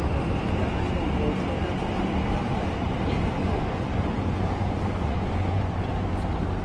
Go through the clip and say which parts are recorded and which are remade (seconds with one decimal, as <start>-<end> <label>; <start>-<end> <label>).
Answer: 0.0-3.4 recorded; 3.4-5.9 remade; 5.9-6.6 recorded